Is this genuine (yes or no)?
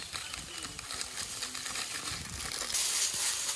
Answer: no